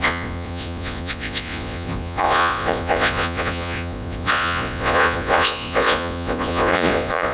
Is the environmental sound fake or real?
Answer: fake